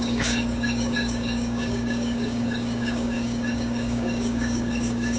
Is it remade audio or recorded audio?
remade